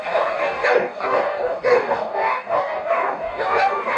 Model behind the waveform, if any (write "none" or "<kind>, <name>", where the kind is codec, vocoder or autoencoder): codec, DAC